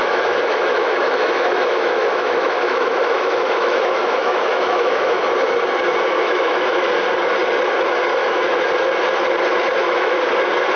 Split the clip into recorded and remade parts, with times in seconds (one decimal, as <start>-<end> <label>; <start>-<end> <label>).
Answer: 0.0-5.2 remade; 5.2-6.2 recorded; 6.2-6.9 remade; 6.9-8.2 recorded; 8.2-8.7 remade; 8.7-9.8 recorded; 9.8-10.3 remade; 10.3-10.8 recorded